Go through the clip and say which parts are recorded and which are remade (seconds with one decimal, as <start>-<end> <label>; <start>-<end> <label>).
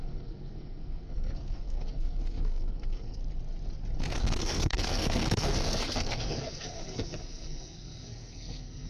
0.0-3.2 remade; 3.2-4.0 recorded; 4.0-8.9 remade